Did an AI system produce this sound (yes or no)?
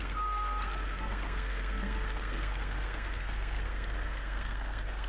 yes